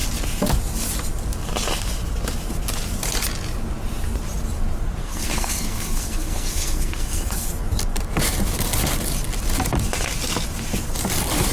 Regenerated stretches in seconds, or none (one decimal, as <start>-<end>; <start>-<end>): 5.0-7.5

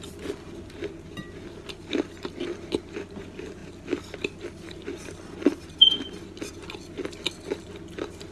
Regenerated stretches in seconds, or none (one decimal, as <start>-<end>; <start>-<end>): none

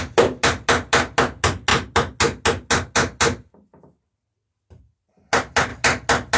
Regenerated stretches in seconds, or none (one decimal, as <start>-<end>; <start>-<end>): none

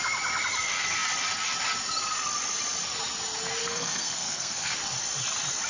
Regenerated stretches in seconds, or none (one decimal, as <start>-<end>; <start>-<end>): 3.6-4.7

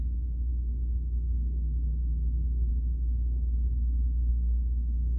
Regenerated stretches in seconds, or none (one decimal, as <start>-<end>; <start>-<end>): 4.3-5.2

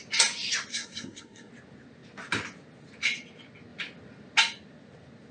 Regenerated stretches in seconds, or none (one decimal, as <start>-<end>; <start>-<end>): 0.7-1.5

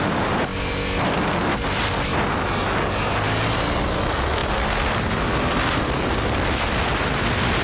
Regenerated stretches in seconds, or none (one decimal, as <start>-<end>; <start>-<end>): none